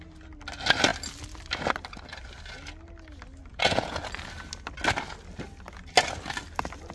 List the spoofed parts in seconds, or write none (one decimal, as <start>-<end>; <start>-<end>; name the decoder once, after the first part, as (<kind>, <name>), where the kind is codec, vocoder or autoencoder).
3.5-4.0 (vocoder, Vocos)